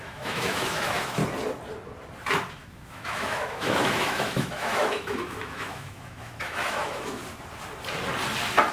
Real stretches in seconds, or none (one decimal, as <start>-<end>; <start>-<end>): 1.2-2.5; 7.2-8.7